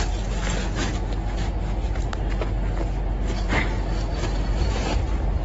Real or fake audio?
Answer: real